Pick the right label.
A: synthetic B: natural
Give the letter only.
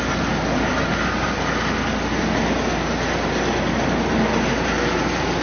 B